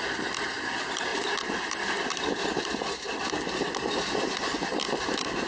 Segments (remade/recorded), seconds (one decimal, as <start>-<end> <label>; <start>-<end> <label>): 0.0-1.1 remade; 1.1-4.4 recorded; 4.4-5.5 remade

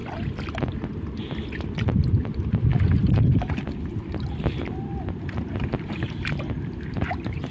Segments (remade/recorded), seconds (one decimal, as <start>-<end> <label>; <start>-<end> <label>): 0.0-0.7 recorded; 0.7-2.7 remade; 2.7-7.5 recorded

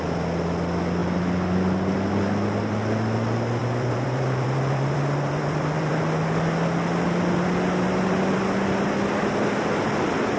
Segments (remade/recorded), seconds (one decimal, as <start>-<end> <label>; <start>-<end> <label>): 0.0-3.6 recorded; 3.6-6.0 remade; 6.0-10.4 recorded

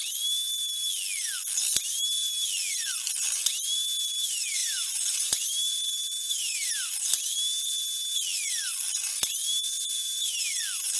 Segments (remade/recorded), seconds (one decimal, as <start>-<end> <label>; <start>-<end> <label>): 0.0-4.6 recorded; 4.6-6.9 remade; 6.9-9.4 recorded; 9.4-10.5 remade; 10.5-11.0 recorded

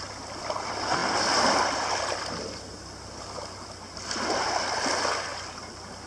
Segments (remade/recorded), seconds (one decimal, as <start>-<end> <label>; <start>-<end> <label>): 0.0-6.1 recorded

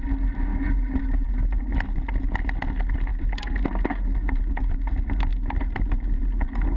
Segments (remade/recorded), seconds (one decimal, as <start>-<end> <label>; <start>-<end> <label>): 0.0-0.5 recorded; 0.5-1.7 remade; 1.7-5.3 recorded; 5.3-6.2 remade; 6.2-6.8 recorded

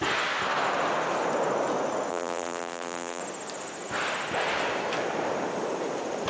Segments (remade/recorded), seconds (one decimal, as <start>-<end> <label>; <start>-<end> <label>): 0.0-2.1 recorded; 2.1-3.2 remade; 3.2-6.3 recorded